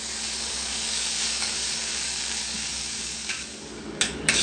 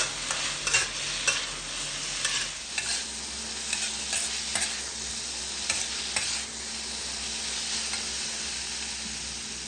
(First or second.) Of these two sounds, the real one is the second